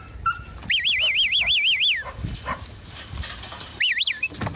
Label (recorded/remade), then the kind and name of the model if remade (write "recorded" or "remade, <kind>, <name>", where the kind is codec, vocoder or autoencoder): recorded